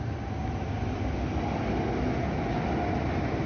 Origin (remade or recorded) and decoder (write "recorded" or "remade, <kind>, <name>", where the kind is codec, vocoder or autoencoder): recorded